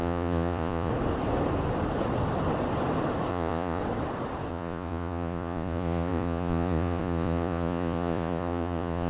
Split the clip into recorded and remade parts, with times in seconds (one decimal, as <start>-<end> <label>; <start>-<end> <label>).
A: 0.0-0.9 remade; 0.9-3.3 recorded; 3.3-3.8 remade; 3.8-4.5 recorded; 4.5-9.1 remade